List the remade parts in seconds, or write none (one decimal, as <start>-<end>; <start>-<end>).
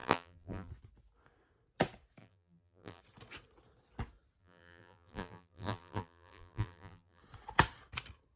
0.0-0.7; 2.2-3.0; 4.4-7.2